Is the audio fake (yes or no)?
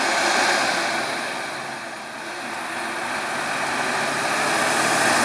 no